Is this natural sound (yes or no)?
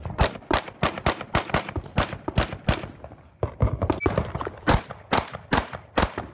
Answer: yes